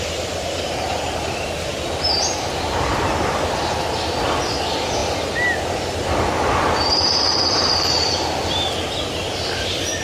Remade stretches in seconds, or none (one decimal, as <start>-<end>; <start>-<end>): 0.0-1.7; 4.5-5.0; 6.8-9.2